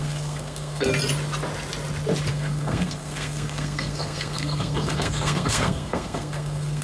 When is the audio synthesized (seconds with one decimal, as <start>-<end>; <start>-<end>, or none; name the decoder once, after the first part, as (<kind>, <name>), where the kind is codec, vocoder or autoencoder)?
0.0-0.9 (codec, SNAC); 2.3-6.8